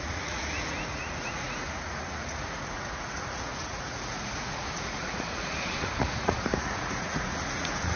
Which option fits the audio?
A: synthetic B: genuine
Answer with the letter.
A